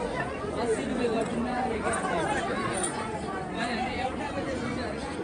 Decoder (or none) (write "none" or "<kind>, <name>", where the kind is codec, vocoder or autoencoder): vocoder, Vocos